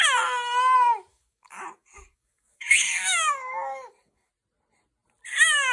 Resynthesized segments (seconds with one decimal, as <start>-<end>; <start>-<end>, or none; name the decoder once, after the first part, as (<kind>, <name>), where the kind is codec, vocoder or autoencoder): 1.1-4.3 (codec, DAC)